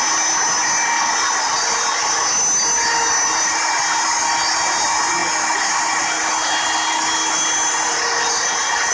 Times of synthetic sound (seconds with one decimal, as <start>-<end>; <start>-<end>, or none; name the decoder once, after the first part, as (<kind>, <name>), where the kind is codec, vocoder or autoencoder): none